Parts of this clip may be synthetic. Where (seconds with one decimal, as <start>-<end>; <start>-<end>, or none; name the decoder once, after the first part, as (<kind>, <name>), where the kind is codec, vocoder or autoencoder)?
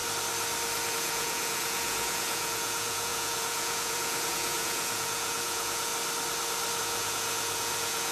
0.9-5.9 (vocoder, Vocos); 6.8-8.1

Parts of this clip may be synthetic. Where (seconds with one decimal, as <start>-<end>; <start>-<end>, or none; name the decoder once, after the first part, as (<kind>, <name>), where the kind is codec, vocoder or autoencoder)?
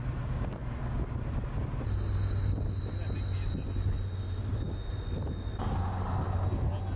none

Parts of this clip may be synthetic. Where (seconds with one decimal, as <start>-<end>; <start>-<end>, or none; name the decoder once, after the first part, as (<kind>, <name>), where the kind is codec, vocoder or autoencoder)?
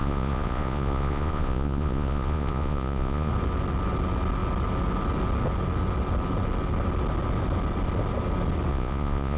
0.0-3.3 (vocoder, Vocos); 8.7-9.4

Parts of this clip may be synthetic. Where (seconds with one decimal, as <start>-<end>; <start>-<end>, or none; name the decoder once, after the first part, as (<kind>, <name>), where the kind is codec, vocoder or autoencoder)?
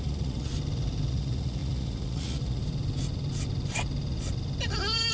0.0-0.5 (vocoder, Vocos); 1.1-2.6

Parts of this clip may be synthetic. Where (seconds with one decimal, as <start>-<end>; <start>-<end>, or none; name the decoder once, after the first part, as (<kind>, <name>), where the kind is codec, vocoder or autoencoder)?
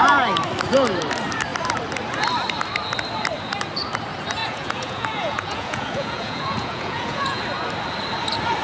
4.4-7.4 (vocoder, Vocos)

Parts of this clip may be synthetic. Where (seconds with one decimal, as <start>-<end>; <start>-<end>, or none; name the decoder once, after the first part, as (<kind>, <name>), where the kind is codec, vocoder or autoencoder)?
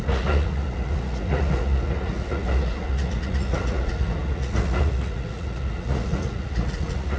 0.0-7.2 (vocoder, Vocos)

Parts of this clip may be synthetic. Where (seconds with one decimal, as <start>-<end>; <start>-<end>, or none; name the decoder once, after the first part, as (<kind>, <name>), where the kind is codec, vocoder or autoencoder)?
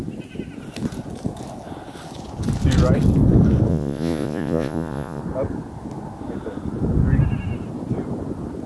3.7-5.2 (vocoder, Vocos)